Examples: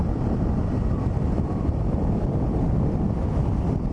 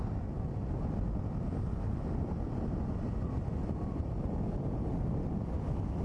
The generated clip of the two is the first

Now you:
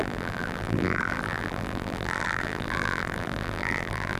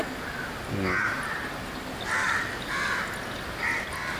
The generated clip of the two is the first